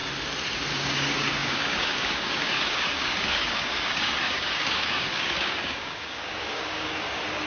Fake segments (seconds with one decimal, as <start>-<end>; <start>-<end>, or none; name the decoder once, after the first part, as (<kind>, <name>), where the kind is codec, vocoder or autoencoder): 0.7-6.9 (codec, DAC)

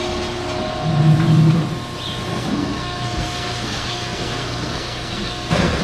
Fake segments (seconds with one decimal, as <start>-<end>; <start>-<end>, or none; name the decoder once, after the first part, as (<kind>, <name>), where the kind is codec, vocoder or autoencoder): 2.3-5.8 (codec, SNAC)

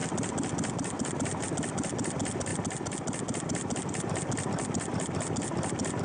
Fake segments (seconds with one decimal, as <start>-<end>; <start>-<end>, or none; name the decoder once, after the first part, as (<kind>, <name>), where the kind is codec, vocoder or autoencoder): none

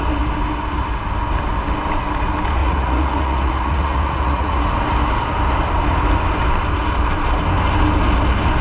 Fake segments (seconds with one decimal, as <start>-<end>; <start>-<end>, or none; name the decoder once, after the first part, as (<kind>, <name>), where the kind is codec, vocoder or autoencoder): 2.6-4.6 (vocoder, Vocos)